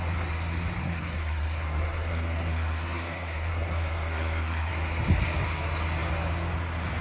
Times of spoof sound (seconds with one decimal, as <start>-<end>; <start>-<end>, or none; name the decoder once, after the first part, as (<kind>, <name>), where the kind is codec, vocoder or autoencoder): 0.8-4.7 (codec, SNAC)